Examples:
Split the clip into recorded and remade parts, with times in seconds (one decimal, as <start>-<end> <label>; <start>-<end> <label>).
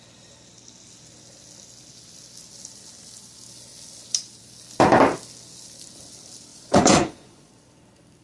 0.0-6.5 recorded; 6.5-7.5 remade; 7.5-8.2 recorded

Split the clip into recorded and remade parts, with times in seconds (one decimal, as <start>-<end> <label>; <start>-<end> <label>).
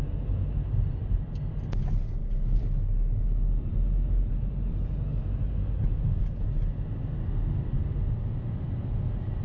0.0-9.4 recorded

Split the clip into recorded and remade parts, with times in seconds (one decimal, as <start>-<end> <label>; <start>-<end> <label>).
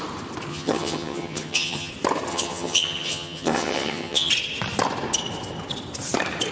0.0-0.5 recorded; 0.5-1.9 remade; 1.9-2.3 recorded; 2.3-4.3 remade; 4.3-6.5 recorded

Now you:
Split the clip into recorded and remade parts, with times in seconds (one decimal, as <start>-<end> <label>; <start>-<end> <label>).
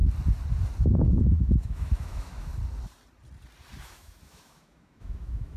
0.0-0.8 recorded; 0.8-2.5 remade; 2.5-3.8 recorded; 3.8-5.6 remade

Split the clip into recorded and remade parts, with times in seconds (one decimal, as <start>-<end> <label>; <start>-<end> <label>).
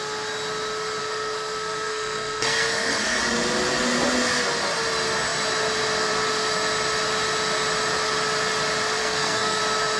0.0-1.0 recorded; 1.0-3.2 remade; 3.2-9.0 recorded; 9.0-9.6 remade; 9.6-10.0 recorded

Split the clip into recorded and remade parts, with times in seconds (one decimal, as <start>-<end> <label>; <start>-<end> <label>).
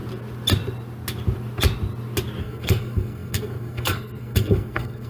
0.0-2.4 recorded; 2.4-5.1 remade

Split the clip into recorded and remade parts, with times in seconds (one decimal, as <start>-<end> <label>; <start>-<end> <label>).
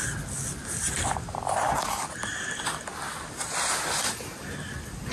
0.0-5.1 recorded